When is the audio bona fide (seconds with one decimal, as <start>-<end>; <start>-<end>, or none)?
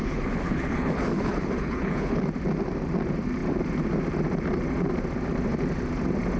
2.2-6.4